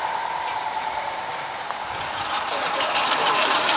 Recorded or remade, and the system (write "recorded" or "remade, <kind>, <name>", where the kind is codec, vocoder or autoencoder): remade, vocoder, BigVGAN v2